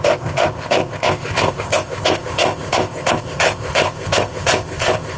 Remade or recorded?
remade